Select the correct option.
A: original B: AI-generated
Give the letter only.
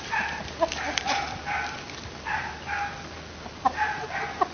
A